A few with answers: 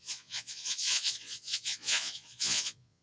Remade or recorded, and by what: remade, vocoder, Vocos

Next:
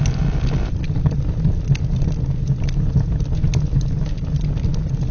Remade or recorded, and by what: recorded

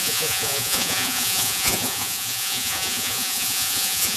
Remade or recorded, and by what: remade, vocoder, Vocos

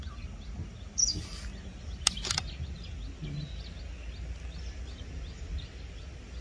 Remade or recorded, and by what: recorded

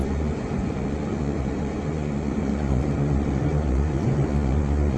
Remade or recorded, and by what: remade, vocoder, Vocos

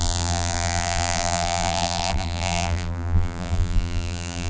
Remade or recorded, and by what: remade, vocoder, BigVGAN v2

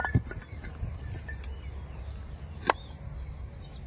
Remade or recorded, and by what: recorded